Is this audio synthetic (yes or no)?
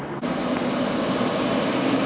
no